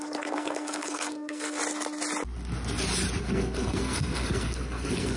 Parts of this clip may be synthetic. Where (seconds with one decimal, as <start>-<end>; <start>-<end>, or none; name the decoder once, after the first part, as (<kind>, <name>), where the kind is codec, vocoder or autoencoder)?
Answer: 0.0-1.6 (codec, SNAC); 3.2-5.2